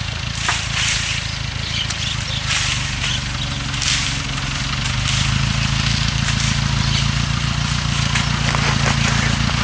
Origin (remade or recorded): recorded